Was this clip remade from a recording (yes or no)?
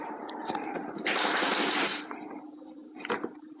yes